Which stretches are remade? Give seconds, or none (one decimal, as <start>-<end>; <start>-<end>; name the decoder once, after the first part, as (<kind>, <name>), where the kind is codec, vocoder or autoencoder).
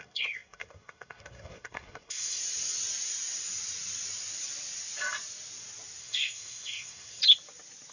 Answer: 0.0-2.4 (codec, SNAC); 6.0-7.2